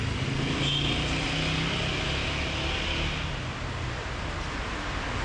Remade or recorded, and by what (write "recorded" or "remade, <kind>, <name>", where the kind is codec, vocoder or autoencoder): recorded